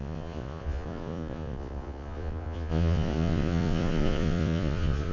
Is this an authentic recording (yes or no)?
no